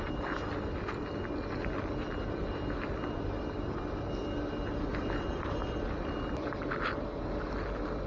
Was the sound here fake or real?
real